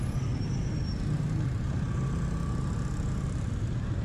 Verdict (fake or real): real